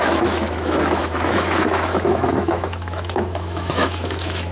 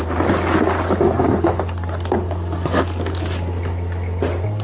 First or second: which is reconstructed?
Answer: first